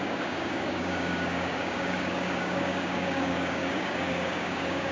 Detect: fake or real fake